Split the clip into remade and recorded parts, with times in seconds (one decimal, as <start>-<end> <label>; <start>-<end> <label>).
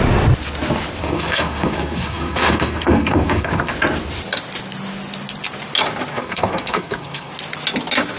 0.0-1.0 recorded; 1.0-3.7 remade; 3.7-6.1 recorded; 6.1-7.3 remade; 7.3-8.2 recorded